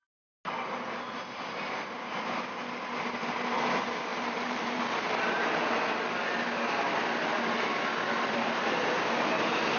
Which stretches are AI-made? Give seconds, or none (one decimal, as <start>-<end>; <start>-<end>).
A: 4.1-4.8